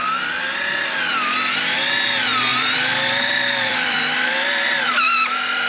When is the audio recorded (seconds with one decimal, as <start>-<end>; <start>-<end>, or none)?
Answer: 0.0-1.1; 1.6-2.5